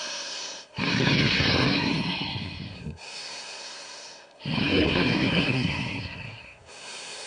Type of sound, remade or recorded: remade